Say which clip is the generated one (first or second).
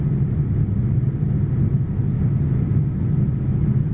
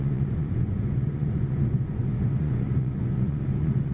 second